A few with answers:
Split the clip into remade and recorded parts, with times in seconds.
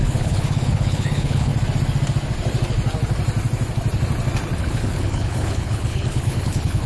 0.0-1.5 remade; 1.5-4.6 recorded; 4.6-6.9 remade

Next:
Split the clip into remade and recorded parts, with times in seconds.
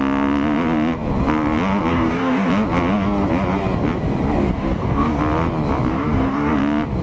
0.0-1.9 recorded; 1.9-2.5 remade; 2.5-4.4 recorded; 4.4-5.2 remade; 5.2-5.9 recorded; 5.9-6.6 remade; 6.6-7.0 recorded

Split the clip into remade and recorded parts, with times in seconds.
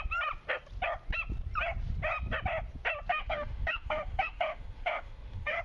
0.0-3.1 recorded; 3.1-5.6 remade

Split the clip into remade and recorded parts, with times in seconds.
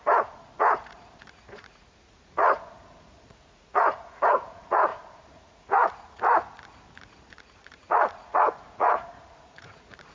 0.0-10.1 remade